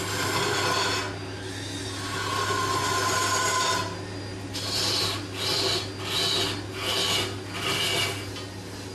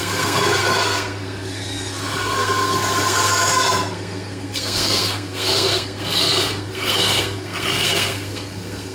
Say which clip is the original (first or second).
first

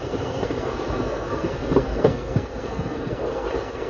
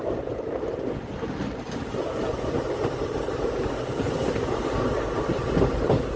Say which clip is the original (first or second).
second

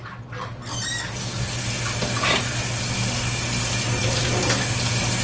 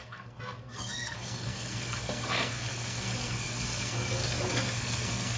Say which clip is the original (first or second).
first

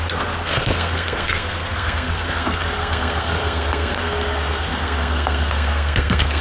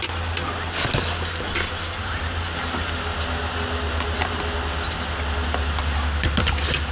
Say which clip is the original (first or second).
second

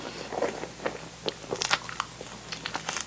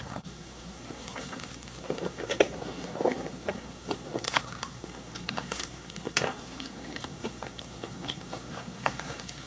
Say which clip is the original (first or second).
first